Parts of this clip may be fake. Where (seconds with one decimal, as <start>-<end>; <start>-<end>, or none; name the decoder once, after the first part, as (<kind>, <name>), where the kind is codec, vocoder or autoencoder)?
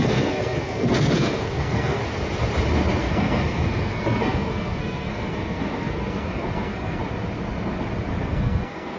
0.0-2.0 (codec, SNAC); 3.0-7.0; 8.2-9.0